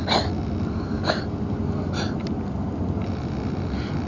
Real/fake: real